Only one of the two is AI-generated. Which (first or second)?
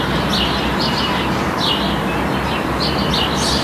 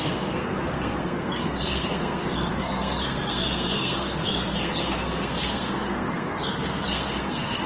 second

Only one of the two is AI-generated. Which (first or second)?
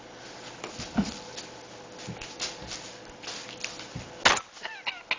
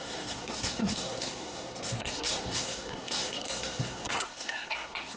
second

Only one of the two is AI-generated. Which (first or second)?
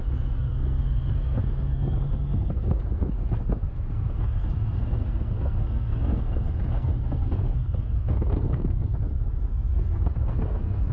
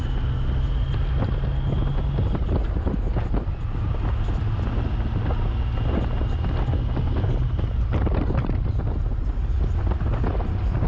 first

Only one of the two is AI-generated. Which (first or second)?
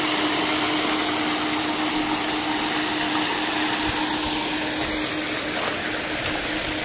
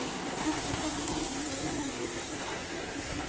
second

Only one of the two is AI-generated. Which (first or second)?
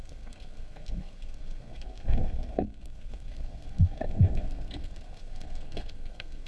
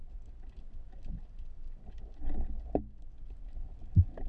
first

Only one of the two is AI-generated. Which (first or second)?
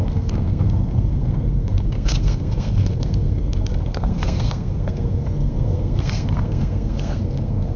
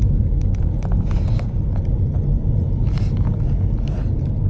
first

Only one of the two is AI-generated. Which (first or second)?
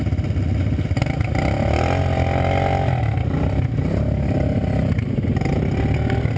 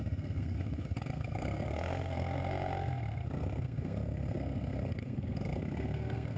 second